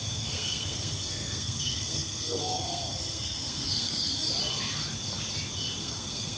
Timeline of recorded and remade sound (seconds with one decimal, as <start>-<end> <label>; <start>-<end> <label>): 0.0-4.1 remade; 4.1-5.8 recorded; 5.8-6.4 remade